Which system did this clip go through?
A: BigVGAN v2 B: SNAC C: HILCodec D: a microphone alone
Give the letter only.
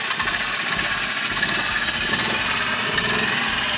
D